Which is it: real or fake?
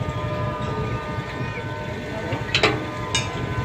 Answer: real